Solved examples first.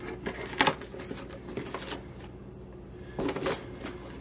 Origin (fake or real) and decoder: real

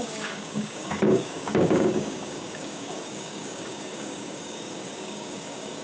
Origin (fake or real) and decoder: fake, codec, DAC